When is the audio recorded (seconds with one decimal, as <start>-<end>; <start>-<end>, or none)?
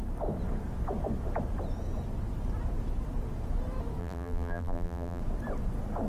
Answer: 0.0-4.0; 5.2-6.1